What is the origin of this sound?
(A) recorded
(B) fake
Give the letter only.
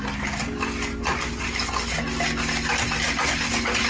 A